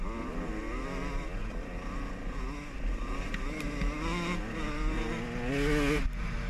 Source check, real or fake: real